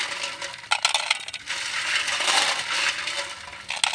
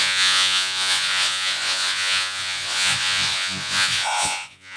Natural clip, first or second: first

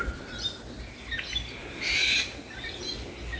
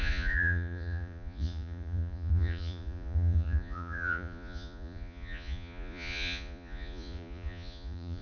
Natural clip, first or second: first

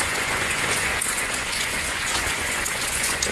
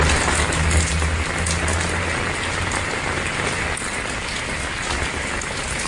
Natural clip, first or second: second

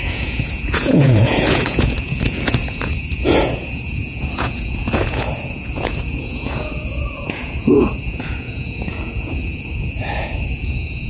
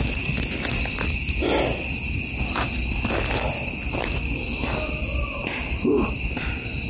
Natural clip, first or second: second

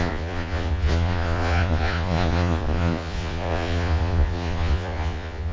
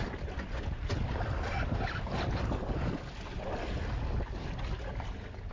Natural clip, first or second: second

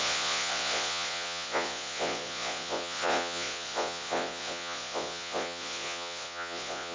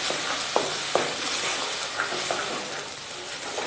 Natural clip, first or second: second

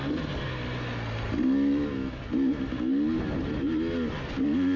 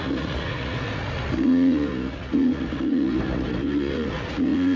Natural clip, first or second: first